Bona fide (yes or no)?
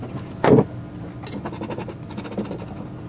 yes